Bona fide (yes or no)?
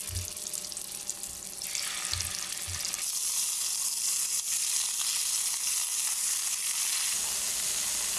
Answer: yes